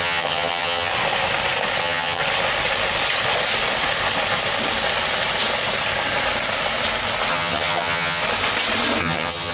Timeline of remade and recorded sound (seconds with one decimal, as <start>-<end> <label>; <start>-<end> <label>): 0.0-0.9 remade; 0.9-1.8 recorded; 1.8-2.2 remade; 2.2-7.3 recorded; 7.3-8.2 remade; 8.2-9.0 recorded; 9.0-9.5 remade